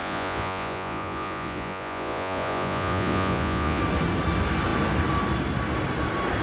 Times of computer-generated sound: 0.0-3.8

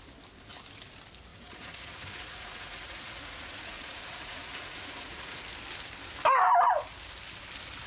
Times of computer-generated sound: 1.3-5.4

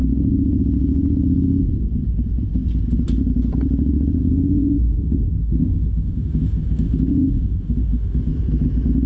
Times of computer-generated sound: 4.2-8.3

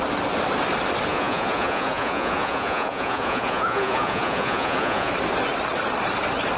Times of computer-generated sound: 1.1-5.1

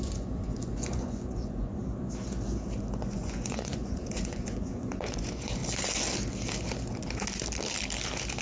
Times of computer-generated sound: 0.0-1.8; 3.0-5.6

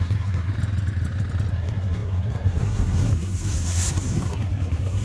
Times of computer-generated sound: 0.0-0.5; 1.5-5.0